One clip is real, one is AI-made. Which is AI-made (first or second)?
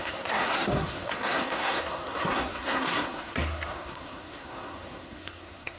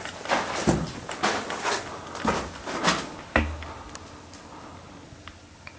first